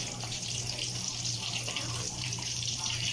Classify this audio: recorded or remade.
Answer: remade